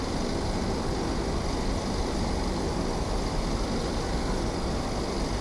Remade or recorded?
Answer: recorded